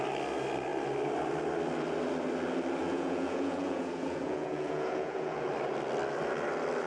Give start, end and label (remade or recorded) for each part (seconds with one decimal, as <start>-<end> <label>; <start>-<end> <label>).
0.0-2.8 recorded; 2.8-5.5 remade; 5.5-6.9 recorded